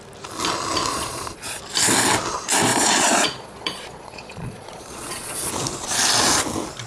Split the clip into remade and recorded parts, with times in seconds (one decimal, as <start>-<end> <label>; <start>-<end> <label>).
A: 0.0-0.9 recorded; 0.9-1.6 remade; 1.6-2.7 recorded; 2.7-5.5 remade; 5.5-6.9 recorded

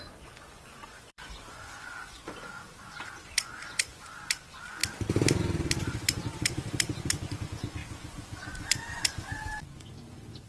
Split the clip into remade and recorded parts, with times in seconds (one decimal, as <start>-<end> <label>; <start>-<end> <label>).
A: 0.0-4.8 remade; 4.8-5.8 recorded; 5.8-10.5 remade

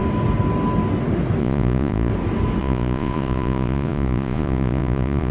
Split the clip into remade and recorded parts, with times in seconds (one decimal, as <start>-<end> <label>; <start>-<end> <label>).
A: 0.0-1.4 recorded; 1.4-2.1 remade; 2.1-2.6 recorded; 2.6-5.3 remade